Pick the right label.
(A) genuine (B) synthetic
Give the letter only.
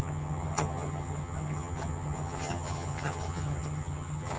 B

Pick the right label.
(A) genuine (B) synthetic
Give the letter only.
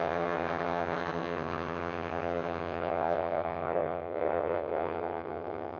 B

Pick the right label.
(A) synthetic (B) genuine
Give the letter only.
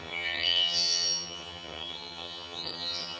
A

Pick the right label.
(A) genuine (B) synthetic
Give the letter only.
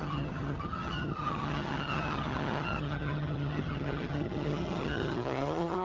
B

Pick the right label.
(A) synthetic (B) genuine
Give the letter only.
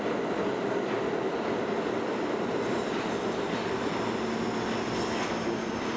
B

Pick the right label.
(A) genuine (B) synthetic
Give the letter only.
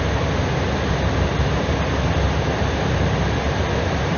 A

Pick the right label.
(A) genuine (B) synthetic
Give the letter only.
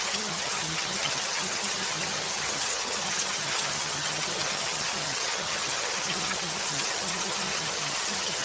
B